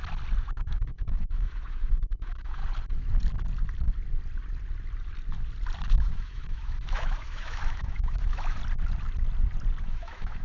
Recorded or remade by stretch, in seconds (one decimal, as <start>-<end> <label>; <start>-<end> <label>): 0.0-0.6 recorded; 0.6-2.6 remade; 2.6-5.9 recorded; 5.9-8.6 remade; 8.6-9.8 recorded; 9.8-10.4 remade